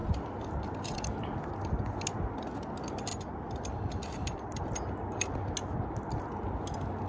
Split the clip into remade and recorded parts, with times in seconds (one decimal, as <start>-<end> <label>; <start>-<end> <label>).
0.0-2.0 remade; 2.0-3.1 recorded; 3.1-4.6 remade; 4.6-7.1 recorded